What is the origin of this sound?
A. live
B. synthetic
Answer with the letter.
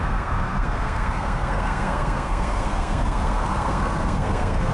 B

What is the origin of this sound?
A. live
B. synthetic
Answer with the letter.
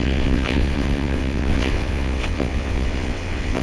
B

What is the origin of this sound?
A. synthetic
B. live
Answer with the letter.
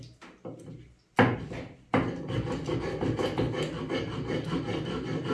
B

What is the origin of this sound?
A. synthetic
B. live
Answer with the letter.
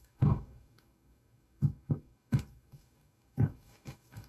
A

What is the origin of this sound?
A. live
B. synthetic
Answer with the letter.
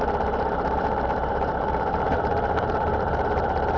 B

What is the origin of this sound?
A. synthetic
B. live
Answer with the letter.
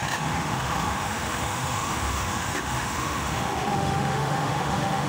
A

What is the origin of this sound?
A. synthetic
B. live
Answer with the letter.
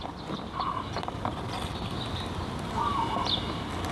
B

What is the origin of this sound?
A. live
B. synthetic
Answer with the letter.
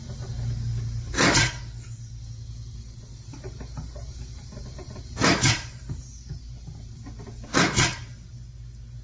A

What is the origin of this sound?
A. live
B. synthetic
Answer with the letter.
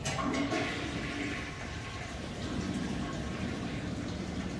A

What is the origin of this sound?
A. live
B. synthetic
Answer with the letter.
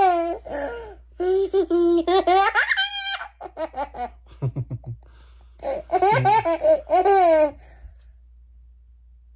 A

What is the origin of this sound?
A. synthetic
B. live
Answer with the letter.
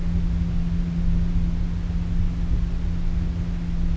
B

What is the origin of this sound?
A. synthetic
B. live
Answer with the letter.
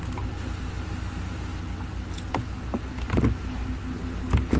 B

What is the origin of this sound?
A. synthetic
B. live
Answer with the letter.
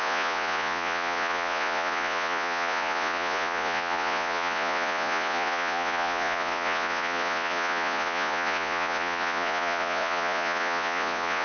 A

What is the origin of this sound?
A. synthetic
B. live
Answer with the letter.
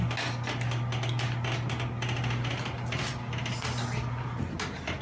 B